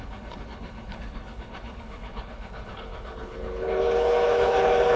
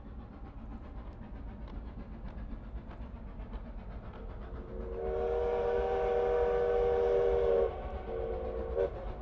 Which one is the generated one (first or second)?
first